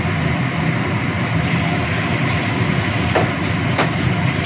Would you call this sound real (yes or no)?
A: yes